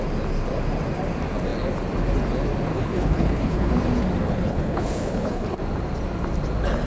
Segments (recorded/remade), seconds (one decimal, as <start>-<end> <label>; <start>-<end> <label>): 0.0-2.7 recorded; 2.7-3.7 remade; 3.7-4.2 recorded; 4.2-5.6 remade; 5.6-6.9 recorded